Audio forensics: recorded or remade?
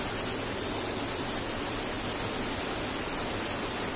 recorded